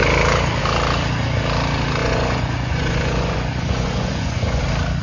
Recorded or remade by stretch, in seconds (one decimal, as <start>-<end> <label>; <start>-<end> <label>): 0.0-2.0 recorded; 2.0-4.6 remade; 4.6-5.0 recorded